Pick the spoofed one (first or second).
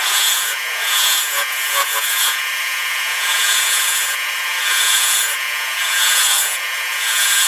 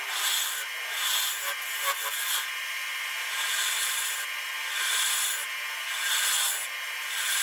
first